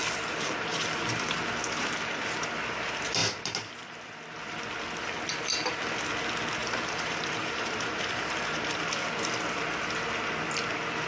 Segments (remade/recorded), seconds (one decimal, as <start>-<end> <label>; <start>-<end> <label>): 0.0-0.7 recorded; 0.7-1.3 remade; 1.3-6.6 recorded; 6.6-8.8 remade; 8.8-11.1 recorded